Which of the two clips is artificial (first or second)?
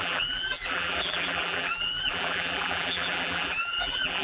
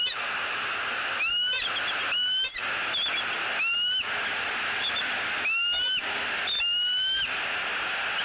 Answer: first